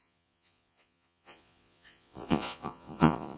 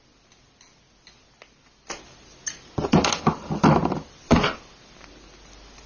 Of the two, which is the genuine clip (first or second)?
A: second